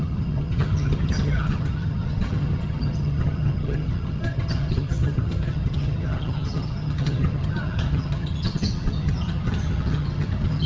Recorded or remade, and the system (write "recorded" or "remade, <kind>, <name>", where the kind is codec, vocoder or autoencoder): remade, vocoder, HiFi-GAN